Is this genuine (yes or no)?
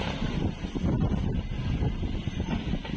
yes